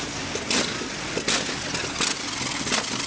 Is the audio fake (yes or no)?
no